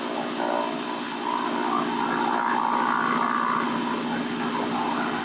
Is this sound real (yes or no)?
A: yes